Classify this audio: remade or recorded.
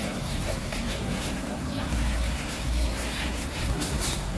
remade